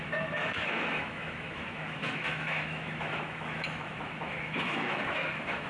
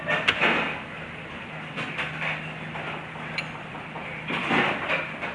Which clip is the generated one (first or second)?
first